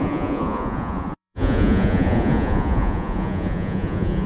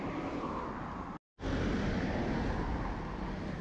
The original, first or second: second